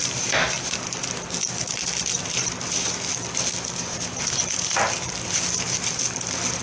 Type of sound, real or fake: fake